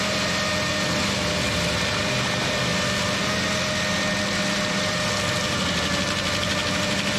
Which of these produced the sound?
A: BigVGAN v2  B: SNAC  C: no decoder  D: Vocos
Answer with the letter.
C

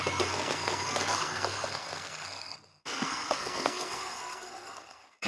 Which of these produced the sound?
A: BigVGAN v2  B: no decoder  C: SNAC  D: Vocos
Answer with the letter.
C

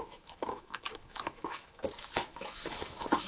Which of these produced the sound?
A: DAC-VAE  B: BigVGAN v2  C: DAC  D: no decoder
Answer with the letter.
A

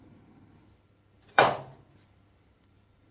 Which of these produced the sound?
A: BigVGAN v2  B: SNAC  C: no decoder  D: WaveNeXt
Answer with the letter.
A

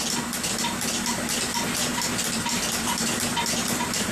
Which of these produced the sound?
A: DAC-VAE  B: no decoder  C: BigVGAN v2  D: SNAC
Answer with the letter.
B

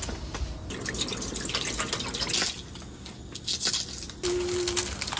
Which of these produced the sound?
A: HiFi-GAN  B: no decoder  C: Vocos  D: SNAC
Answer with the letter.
B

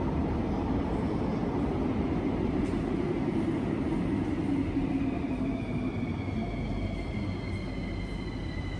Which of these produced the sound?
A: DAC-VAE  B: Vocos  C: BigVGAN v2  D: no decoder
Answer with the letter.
D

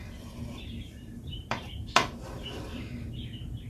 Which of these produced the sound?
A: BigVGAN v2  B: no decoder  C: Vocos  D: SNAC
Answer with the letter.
A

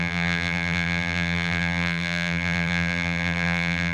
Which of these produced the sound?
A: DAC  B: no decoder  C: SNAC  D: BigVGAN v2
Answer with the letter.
D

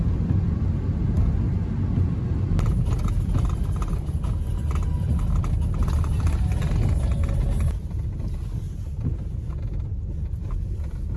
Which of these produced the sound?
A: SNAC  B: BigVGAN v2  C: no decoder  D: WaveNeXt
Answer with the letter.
C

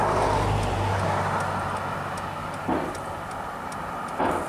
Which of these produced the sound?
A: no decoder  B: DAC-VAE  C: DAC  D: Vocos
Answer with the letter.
A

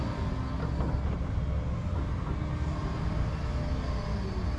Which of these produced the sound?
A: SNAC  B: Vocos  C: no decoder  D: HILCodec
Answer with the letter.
C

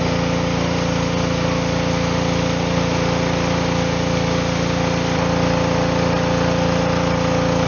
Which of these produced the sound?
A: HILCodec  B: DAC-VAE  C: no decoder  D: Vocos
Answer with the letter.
C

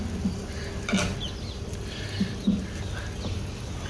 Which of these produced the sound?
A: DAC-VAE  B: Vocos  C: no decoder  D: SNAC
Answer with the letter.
C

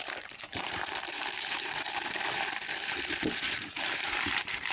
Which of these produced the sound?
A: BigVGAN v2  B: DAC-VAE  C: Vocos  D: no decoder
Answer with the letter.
A